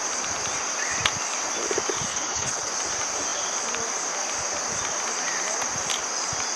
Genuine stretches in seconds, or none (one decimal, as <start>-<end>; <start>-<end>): 0.0-2.1; 2.7-6.6